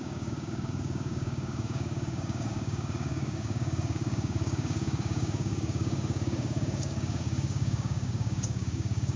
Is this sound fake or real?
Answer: fake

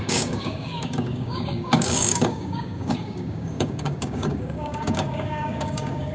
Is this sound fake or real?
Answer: fake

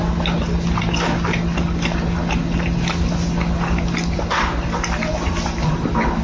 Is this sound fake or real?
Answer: real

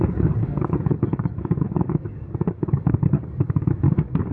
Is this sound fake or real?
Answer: fake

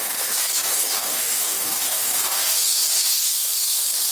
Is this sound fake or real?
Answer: fake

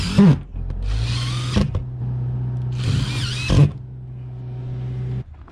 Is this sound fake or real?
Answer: real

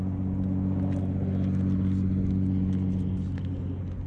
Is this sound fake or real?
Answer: real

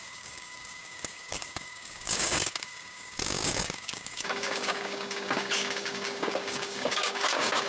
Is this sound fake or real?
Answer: fake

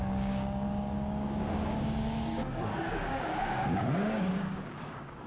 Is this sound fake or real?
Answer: fake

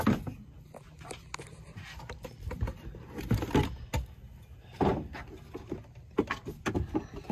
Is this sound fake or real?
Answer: real